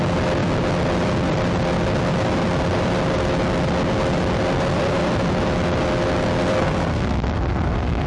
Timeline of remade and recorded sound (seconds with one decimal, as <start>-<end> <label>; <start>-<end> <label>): 0.0-6.5 recorded; 6.5-8.1 remade

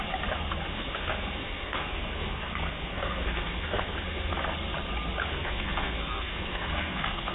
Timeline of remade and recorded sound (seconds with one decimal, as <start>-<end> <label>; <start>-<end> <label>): 0.0-0.7 recorded; 0.7-4.3 remade; 4.3-5.3 recorded; 5.3-7.3 remade

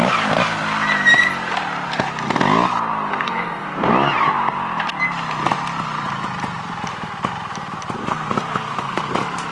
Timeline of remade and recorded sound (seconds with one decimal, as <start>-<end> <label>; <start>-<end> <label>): 0.0-3.1 recorded; 3.1-3.9 remade; 3.9-8.0 recorded; 8.0-9.0 remade; 9.0-9.5 recorded